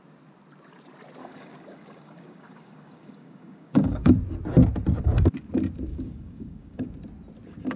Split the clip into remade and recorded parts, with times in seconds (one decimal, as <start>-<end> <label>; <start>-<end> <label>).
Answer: 0.0-1.2 recorded; 1.2-4.1 remade; 4.1-5.9 recorded; 5.9-6.9 remade; 6.9-7.8 recorded